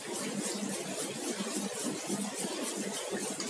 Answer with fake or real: real